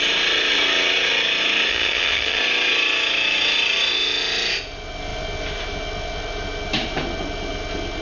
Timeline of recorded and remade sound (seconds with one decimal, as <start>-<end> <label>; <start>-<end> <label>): 0.0-1.7 recorded; 1.7-2.4 remade; 2.4-8.0 recorded